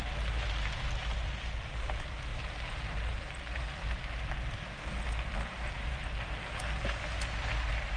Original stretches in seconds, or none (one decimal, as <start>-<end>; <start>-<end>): 0.0-8.0

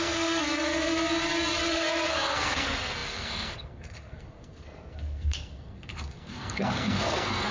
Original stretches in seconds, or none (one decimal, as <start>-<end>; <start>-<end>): 0.9-1.7

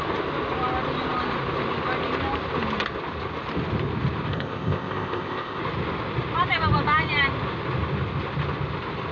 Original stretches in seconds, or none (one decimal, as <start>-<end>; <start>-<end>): 0.0-4.3; 5.6-9.1

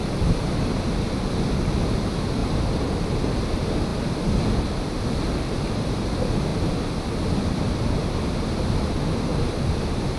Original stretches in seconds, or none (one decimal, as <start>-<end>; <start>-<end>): 0.0-9.3